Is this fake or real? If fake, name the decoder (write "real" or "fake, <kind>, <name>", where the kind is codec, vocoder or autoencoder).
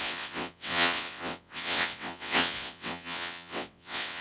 fake, vocoder, WaveNeXt